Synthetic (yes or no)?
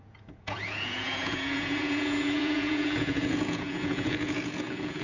yes